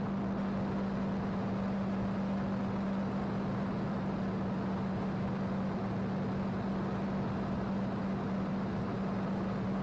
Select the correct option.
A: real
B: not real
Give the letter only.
A